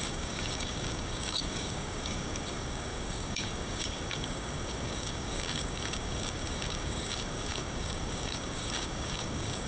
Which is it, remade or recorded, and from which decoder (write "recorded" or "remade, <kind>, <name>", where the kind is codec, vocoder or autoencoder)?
remade, codec, DAC